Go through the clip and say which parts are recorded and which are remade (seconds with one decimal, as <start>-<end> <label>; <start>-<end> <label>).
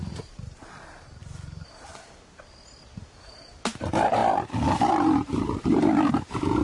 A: 0.0-1.2 remade; 1.2-3.8 recorded; 3.8-4.2 remade; 4.2-4.9 recorded; 4.9-6.6 remade